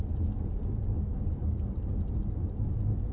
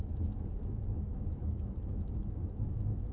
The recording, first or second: first